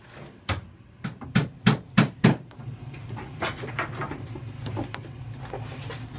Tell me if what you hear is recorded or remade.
recorded